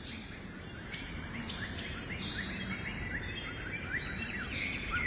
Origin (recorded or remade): remade